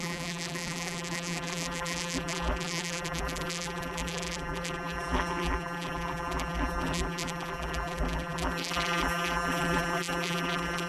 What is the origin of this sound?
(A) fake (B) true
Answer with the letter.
A